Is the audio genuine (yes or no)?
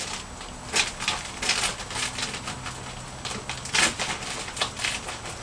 yes